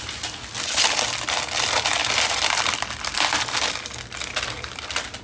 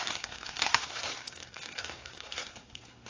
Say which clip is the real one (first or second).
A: first